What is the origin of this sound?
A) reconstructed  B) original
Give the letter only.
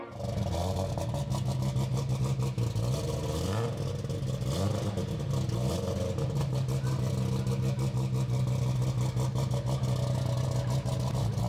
B